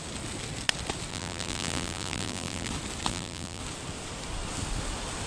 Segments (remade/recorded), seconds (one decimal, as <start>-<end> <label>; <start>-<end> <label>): 0.0-1.1 recorded; 1.1-2.7 remade; 2.7-3.1 recorded; 3.1-3.6 remade; 3.6-5.3 recorded